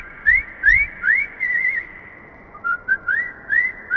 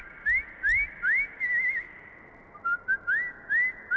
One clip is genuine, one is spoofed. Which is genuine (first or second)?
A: second